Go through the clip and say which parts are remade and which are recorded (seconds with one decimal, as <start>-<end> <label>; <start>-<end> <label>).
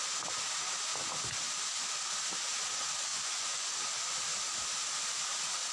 0.0-3.1 recorded; 3.1-3.7 remade; 3.7-5.7 recorded